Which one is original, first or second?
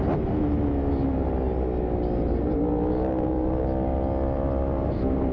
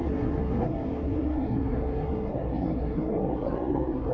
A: first